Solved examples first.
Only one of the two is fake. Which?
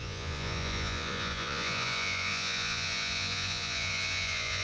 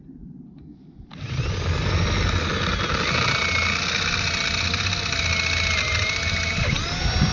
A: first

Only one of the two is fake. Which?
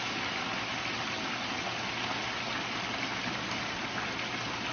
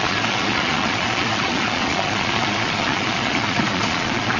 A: second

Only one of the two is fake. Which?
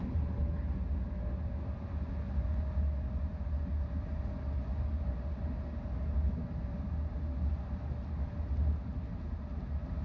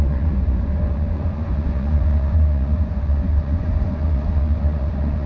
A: second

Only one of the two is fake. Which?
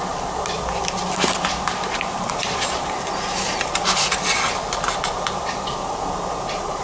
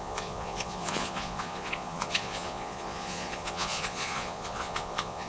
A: second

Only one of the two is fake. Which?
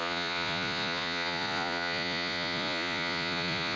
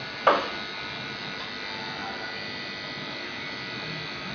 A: first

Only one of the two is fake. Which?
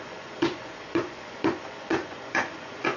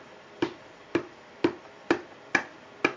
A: first